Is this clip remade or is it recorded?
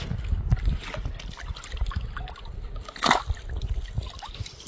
recorded